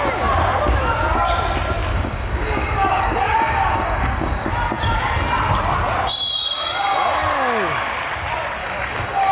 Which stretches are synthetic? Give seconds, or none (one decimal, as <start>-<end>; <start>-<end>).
1.9-4.5; 8.6-9.3